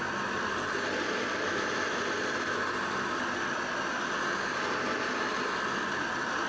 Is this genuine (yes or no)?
yes